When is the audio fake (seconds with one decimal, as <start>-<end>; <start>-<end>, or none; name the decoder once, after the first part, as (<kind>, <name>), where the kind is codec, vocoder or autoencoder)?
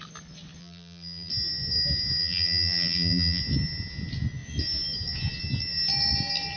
0.6-1.3 (vocoder, BigVGAN v2); 2.2-3.4